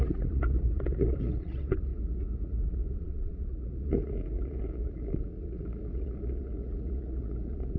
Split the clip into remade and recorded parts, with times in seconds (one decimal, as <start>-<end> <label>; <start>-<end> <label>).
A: 0.0-7.8 remade